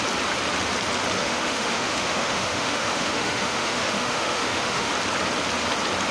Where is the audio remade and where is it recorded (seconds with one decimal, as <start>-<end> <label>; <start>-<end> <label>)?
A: 0.0-1.2 recorded; 1.2-4.9 remade; 4.9-6.1 recorded